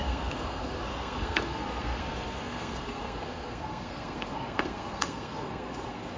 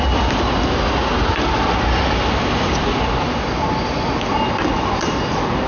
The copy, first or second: first